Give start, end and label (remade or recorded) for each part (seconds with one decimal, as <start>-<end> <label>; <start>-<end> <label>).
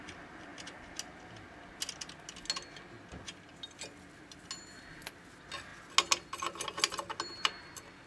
0.0-8.1 recorded